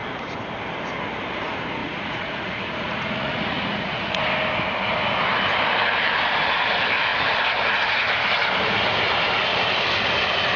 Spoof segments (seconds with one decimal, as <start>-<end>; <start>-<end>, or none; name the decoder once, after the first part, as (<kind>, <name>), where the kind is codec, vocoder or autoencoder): 1.8-4.2 (vocoder, Vocos)